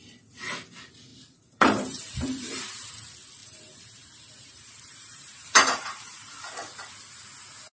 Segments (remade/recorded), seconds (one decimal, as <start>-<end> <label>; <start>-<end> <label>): 0.0-1.1 recorded; 1.1-2.9 remade; 2.9-3.4 recorded; 3.4-6.3 remade; 6.3-7.7 recorded